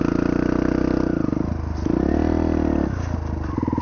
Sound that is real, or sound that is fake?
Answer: real